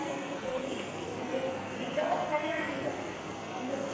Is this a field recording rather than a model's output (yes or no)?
no